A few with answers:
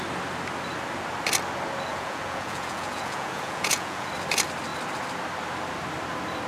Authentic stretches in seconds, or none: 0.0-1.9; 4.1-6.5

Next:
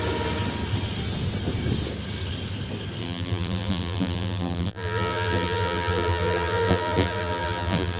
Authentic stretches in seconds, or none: 0.0-3.0

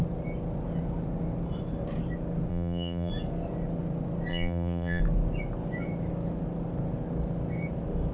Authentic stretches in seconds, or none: 0.0-2.5; 3.1-4.3; 5.0-8.1

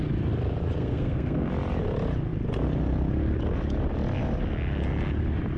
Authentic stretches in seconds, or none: 0.0-0.8; 1.5-5.6